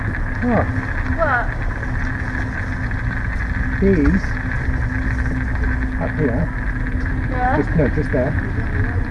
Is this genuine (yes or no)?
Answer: yes